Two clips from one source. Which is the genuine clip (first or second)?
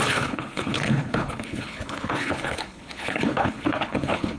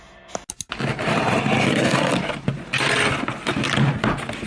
second